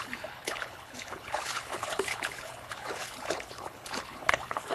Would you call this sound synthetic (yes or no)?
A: yes